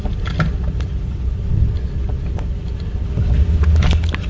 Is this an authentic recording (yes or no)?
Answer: yes